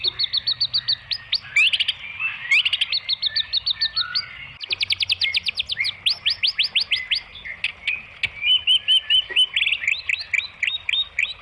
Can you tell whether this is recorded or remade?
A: recorded